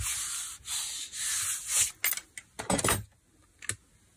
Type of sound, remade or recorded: recorded